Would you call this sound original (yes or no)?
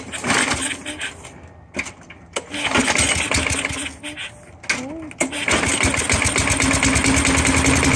yes